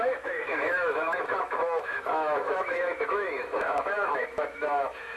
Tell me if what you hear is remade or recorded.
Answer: remade